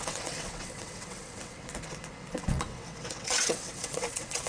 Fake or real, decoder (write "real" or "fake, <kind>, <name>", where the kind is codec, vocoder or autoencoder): fake, vocoder, WaveNeXt